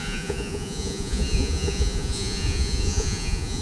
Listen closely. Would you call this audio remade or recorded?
remade